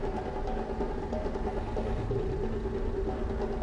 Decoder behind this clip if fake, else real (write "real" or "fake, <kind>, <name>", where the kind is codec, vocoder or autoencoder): real